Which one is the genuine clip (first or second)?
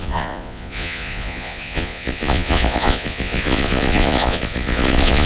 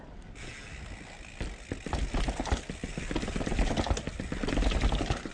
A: second